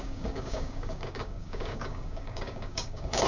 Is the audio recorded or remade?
remade